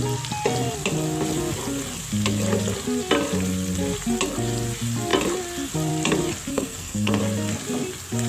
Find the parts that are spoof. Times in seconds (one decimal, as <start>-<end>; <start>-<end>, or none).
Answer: 6.5-7.2